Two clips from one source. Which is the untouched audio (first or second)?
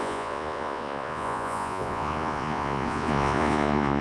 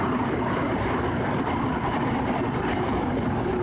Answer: second